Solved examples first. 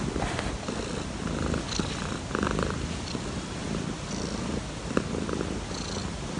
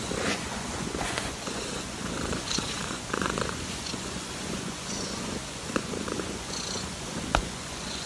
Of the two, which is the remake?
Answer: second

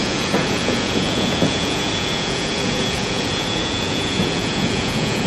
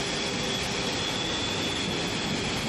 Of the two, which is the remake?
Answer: first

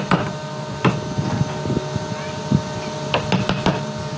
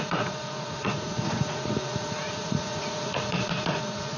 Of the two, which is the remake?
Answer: second